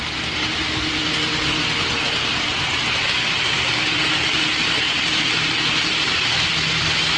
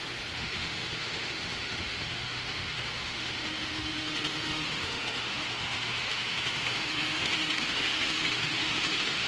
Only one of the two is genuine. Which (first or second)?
first